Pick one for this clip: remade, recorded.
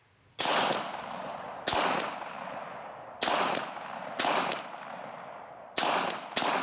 recorded